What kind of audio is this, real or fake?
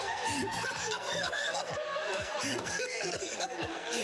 fake